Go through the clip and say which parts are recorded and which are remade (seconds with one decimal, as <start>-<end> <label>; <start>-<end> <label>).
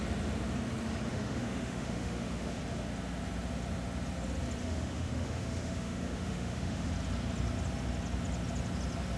0.0-1.1 recorded; 1.1-2.6 remade; 2.6-4.6 recorded; 4.6-6.9 remade; 6.9-9.2 recorded